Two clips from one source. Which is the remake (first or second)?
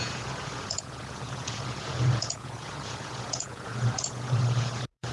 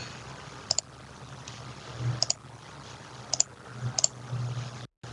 first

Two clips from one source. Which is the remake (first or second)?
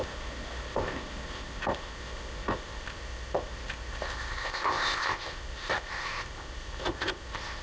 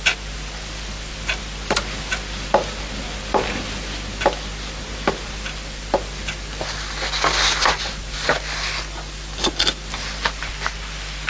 first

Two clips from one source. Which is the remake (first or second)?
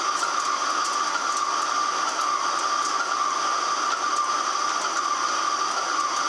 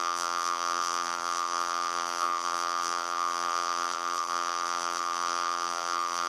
second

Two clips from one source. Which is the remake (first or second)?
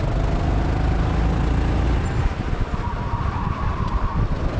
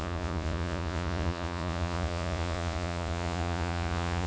second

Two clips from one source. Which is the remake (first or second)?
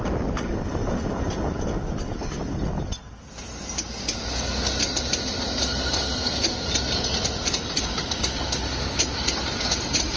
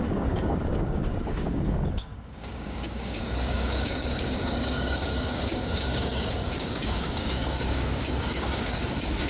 second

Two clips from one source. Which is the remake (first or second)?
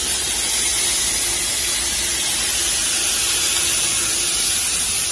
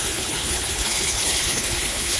second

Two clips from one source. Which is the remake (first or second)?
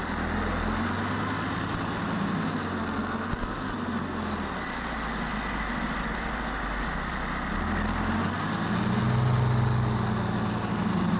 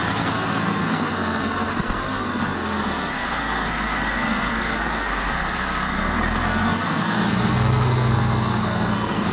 second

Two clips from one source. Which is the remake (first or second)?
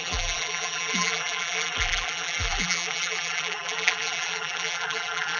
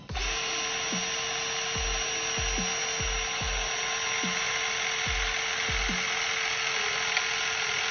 first